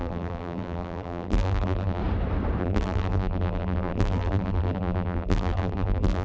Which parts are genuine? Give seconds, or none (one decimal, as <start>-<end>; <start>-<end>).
2.0-2.6